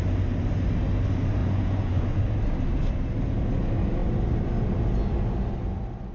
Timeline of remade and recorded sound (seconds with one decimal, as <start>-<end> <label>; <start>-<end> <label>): 0.0-1.4 recorded; 1.4-2.2 remade; 2.2-6.1 recorded